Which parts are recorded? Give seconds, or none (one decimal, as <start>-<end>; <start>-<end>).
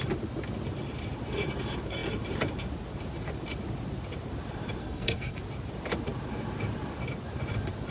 0.0-4.8; 5.4-7.9